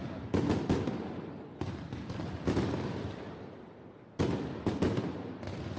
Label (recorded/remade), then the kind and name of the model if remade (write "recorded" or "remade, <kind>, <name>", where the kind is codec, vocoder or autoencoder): recorded